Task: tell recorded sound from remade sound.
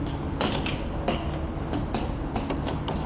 recorded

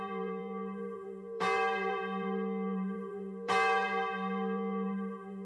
remade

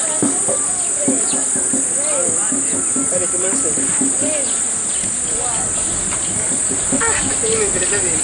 recorded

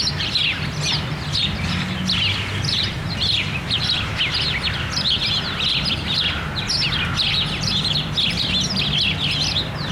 recorded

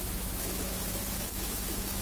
remade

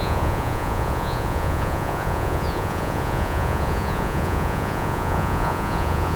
remade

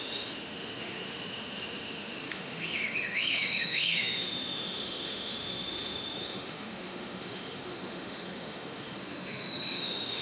remade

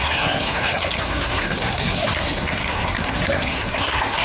remade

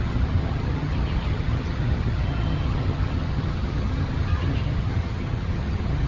remade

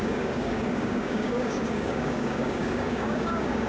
remade